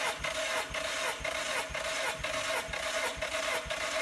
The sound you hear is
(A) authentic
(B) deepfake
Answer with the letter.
A